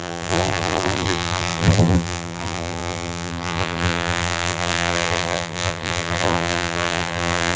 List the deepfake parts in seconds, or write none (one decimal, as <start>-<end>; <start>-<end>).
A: 0.0-7.6